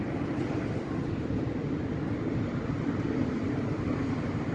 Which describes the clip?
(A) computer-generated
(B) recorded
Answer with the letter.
B